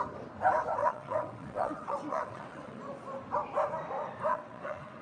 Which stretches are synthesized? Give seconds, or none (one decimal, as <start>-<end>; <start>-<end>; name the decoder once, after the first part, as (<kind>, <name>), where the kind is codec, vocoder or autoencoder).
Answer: 0.8-2.8 (vocoder, WaveNeXt); 4.3-5.0